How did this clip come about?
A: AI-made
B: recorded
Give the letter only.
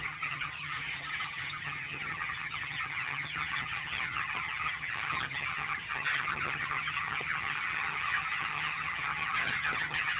A